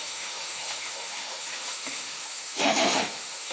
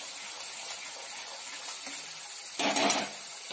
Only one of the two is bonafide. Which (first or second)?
second